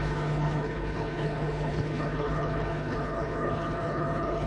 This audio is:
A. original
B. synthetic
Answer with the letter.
B